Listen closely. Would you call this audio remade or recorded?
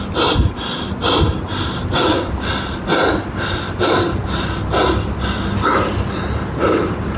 recorded